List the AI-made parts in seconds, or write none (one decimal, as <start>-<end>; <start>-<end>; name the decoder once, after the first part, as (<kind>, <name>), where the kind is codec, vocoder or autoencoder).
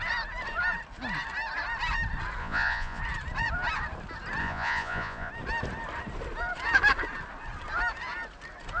2.4-3.0 (vocoder, Vocos); 4.4-5.3